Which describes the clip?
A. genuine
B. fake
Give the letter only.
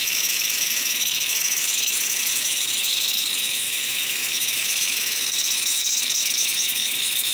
B